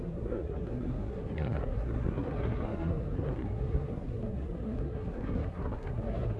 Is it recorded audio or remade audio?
remade